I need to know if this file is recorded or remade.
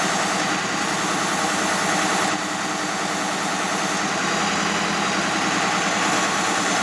recorded